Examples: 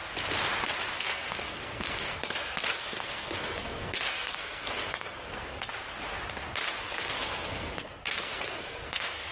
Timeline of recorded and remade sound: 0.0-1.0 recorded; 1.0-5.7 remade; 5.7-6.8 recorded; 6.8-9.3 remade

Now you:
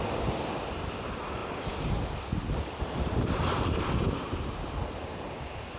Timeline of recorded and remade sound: 0.0-5.8 recorded

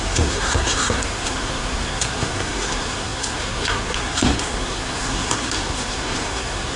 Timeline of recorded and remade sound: 0.0-6.8 remade

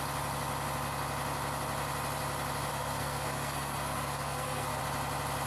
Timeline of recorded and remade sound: 0.0-2.7 recorded; 2.7-4.8 remade; 4.8-5.5 recorded

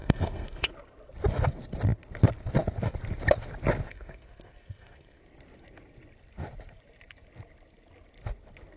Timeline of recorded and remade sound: 0.0-0.7 remade; 0.7-3.9 recorded; 3.9-5.2 remade; 5.2-8.8 recorded

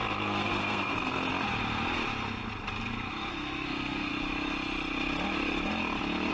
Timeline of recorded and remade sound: 0.0-1.2 remade; 1.2-3.3 recorded; 3.3-4.1 remade; 4.1-6.3 recorded

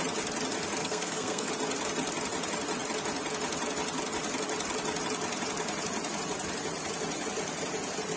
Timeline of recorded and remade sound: 0.0-0.8 recorded; 0.8-1.5 remade; 1.5-8.2 recorded

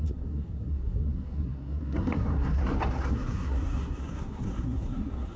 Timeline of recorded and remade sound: 0.0-2.6 remade; 2.6-3.1 recorded; 3.1-5.4 remade